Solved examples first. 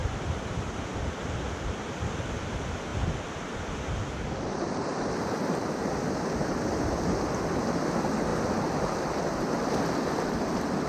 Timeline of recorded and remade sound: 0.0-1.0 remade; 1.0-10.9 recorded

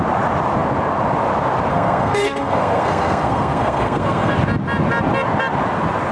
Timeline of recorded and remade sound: 0.0-1.7 recorded; 1.7-4.3 remade; 4.3-6.1 recorded

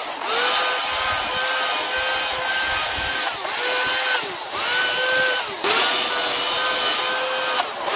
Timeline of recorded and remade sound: 0.0-8.0 recorded

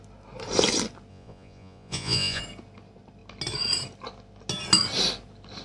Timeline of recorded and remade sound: 0.0-1.1 recorded; 1.1-2.4 remade; 2.4-5.6 recorded

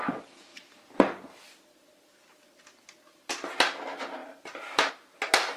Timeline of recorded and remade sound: 0.0-0.5 recorded; 0.5-1.4 remade; 1.4-4.2 recorded; 4.2-4.9 remade; 4.9-5.6 recorded

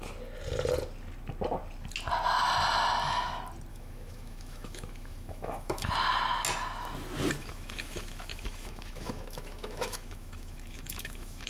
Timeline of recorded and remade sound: 0.0-3.7 recorded; 3.7-5.9 remade; 5.9-7.4 recorded; 7.4-11.5 remade

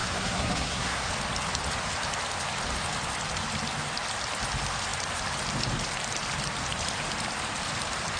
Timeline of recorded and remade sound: 0.0-1.1 remade; 1.1-8.2 recorded

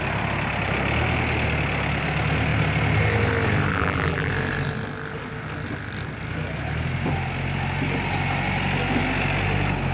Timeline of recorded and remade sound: 0.0-3.7 recorded; 3.7-4.3 remade; 4.3-9.9 recorded